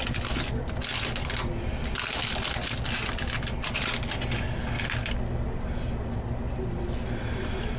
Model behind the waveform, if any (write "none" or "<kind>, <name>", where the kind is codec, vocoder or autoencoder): none